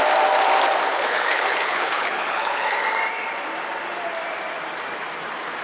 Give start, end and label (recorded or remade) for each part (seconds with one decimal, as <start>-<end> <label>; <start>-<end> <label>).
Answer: 0.0-0.9 recorded; 0.9-2.8 remade; 2.8-5.6 recorded